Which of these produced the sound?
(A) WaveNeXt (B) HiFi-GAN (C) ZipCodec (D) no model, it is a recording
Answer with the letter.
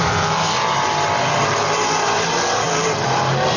D